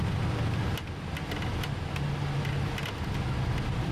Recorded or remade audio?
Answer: recorded